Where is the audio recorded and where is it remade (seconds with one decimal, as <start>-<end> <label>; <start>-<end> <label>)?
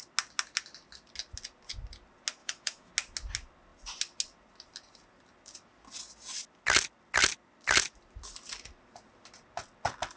0.0-2.4 recorded; 2.4-2.9 remade; 2.9-10.2 recorded